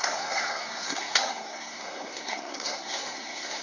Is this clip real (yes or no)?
no